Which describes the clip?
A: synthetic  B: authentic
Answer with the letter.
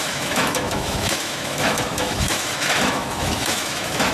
A